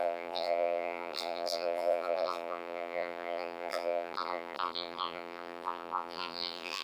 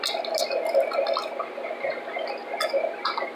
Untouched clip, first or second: second